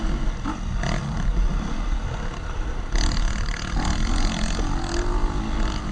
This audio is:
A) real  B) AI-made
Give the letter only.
A